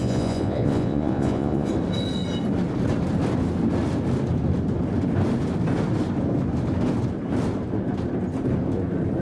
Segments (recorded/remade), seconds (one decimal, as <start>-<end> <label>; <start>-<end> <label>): 0.0-1.7 remade; 1.7-9.2 recorded